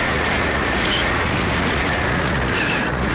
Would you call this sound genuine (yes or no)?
no